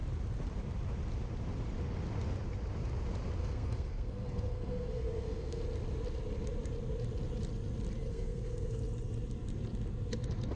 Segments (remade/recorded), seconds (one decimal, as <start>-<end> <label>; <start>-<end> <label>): 0.0-3.4 recorded; 3.4-5.6 remade; 5.6-8.1 recorded; 8.1-8.8 remade; 8.8-10.6 recorded